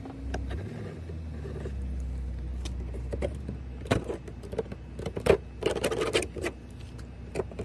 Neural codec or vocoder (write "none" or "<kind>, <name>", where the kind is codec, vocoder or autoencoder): none